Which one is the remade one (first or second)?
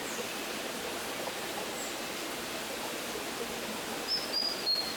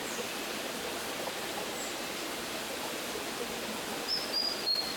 second